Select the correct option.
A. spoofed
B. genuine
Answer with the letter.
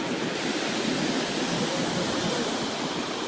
B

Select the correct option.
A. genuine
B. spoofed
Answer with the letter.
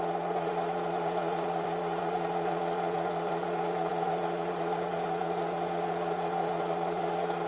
B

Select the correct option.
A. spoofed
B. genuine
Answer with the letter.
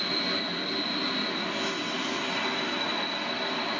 B